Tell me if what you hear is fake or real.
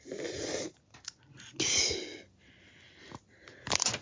real